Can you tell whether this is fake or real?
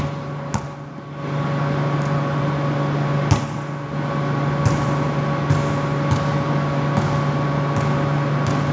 real